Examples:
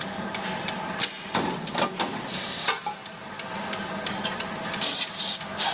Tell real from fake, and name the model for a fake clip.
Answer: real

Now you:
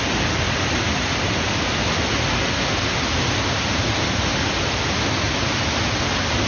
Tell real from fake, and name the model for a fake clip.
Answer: real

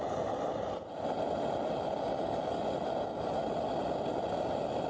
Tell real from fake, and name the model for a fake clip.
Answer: real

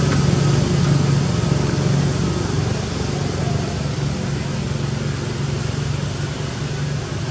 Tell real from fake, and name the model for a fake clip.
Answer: real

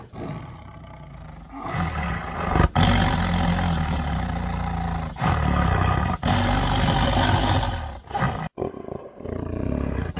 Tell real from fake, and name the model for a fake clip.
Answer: real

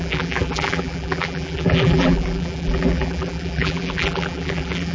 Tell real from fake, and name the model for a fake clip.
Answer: fake, vocoder, BigVGAN v2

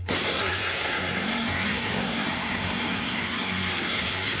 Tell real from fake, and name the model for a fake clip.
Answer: fake, codec, SNAC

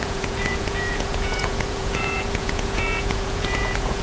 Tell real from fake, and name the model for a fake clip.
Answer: fake, vocoder, Vocos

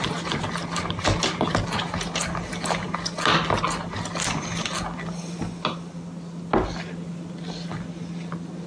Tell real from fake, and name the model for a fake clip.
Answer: real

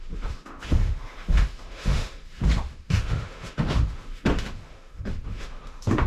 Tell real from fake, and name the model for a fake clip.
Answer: fake, autoencoder, DAC-VAE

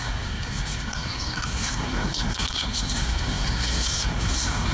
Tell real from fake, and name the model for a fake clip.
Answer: fake, codec, SNAC